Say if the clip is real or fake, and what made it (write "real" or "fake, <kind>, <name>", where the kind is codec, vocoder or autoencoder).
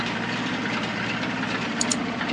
real